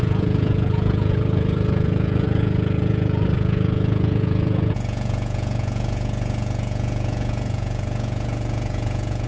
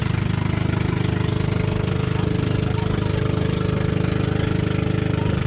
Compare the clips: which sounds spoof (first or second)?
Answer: first